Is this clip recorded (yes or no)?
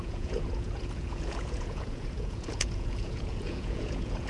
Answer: no